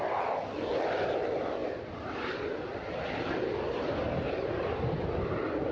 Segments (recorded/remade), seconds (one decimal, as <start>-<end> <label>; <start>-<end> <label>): 0.0-1.6 recorded; 1.6-5.0 remade; 5.0-5.7 recorded